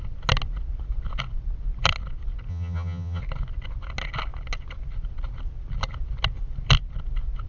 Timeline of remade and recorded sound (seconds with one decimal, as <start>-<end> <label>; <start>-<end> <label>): 0.0-2.5 recorded; 2.5-3.2 remade; 3.2-7.5 recorded